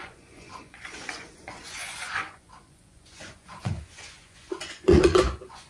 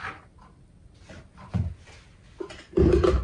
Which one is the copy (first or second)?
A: first